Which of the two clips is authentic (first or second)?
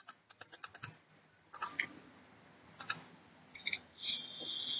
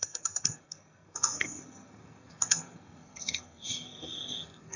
first